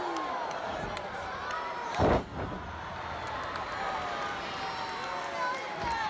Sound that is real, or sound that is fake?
real